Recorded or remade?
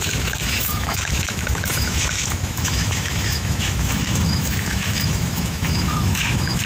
remade